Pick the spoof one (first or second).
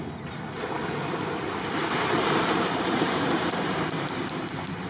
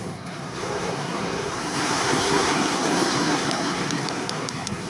second